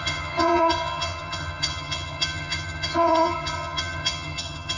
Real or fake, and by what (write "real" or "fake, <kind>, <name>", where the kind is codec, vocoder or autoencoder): fake, vocoder, HiFi-GAN